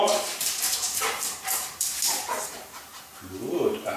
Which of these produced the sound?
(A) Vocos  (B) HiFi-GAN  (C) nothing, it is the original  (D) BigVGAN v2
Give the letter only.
D